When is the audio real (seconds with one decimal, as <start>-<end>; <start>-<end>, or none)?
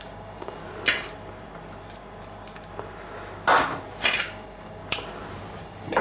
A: 0.6-4.2; 4.8-5.6